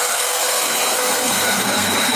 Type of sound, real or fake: fake